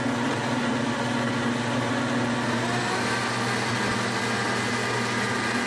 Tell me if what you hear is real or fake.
real